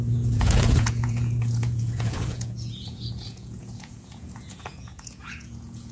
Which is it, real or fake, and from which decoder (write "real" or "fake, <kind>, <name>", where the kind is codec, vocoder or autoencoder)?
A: fake, vocoder, Vocos